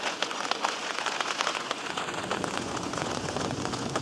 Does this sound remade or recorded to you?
remade